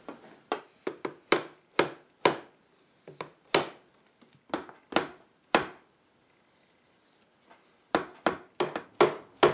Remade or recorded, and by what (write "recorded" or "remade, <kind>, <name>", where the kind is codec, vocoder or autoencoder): recorded